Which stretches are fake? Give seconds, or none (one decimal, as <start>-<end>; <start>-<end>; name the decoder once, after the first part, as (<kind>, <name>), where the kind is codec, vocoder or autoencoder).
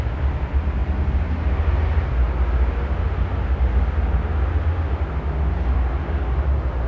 none